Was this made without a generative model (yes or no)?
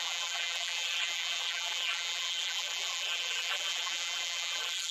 no